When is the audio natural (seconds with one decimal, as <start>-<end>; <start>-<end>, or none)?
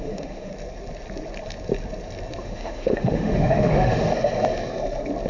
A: 0.5-2.4; 4.1-5.3